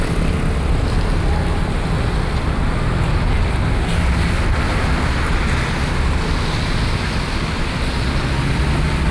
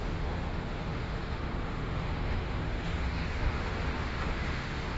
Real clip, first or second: first